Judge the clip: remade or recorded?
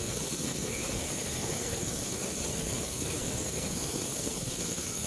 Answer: remade